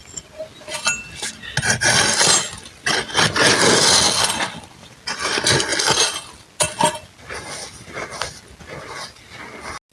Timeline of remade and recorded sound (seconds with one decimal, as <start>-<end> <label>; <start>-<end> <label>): 0.0-9.9 recorded